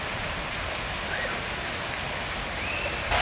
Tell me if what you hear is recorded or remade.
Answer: recorded